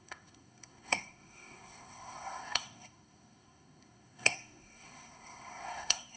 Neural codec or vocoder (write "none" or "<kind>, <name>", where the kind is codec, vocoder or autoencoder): codec, SNAC